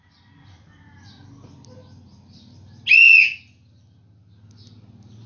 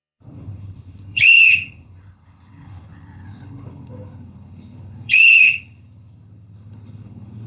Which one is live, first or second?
first